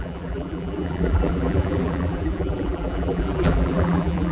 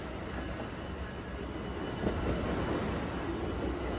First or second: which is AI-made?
first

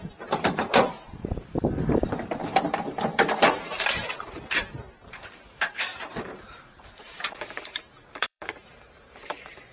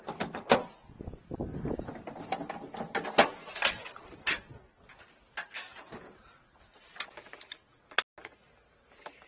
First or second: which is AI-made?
first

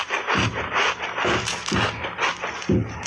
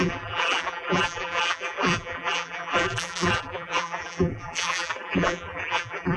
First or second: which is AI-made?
second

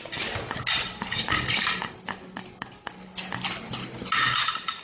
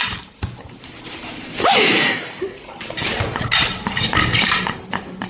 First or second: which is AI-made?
second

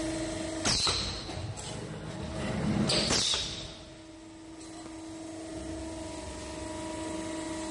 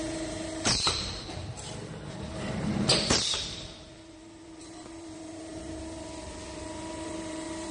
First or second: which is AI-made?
second